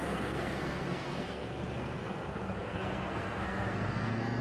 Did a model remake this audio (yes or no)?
yes